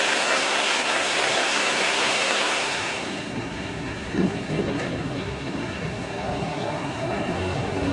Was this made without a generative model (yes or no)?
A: no